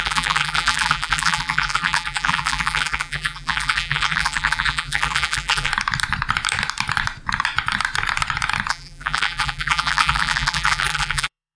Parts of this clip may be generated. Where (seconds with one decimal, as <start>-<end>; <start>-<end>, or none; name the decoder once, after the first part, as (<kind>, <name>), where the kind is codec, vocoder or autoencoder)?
0.0-5.7 (vocoder, BigVGAN v2); 8.7-11.6